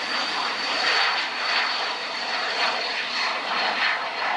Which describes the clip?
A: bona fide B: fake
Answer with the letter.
B